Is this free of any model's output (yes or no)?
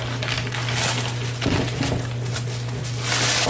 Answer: yes